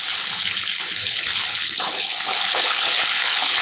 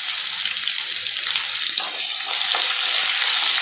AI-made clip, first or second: first